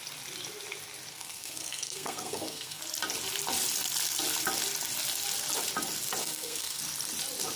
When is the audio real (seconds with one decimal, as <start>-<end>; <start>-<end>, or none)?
0.0-1.1; 2.8-6.2; 6.8-7.6